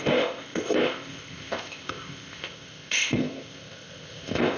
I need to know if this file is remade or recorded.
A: remade